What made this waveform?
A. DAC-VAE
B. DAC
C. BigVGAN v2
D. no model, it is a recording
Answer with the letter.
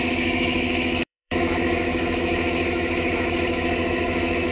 A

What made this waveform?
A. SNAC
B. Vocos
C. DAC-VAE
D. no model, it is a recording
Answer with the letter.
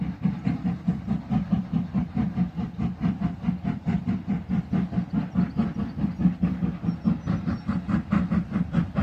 D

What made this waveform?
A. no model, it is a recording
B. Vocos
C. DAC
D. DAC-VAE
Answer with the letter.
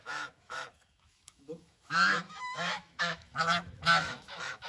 D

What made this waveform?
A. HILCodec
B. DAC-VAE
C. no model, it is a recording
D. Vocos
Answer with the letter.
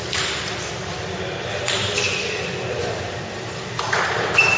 C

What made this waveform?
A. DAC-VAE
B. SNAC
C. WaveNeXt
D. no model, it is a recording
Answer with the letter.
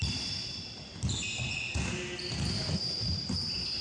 D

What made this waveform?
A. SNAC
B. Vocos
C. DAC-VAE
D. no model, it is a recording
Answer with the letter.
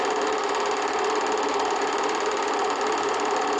D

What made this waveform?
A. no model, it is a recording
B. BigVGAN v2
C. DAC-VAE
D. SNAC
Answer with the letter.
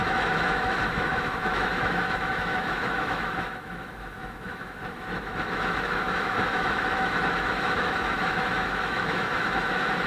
C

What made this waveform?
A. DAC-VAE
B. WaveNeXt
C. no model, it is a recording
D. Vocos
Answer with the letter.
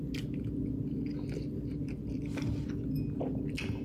C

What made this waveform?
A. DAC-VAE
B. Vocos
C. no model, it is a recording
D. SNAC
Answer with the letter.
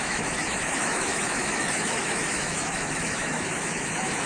A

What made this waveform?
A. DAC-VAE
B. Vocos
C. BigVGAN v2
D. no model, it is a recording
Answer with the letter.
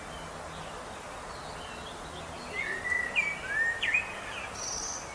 D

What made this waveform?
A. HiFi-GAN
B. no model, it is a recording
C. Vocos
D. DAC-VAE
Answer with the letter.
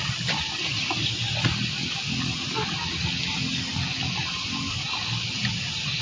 B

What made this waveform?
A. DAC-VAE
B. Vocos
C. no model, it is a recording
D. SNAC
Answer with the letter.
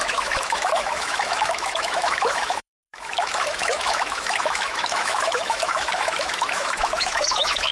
A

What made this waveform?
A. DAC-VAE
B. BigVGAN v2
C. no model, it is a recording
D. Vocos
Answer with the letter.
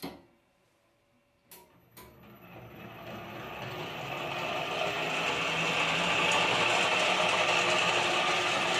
C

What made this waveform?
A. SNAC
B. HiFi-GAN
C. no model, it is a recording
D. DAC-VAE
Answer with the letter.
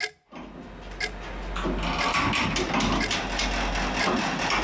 C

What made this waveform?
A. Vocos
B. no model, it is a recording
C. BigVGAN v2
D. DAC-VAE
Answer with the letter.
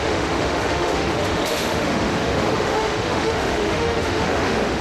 D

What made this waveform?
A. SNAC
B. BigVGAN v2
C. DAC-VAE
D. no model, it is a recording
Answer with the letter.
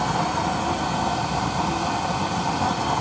D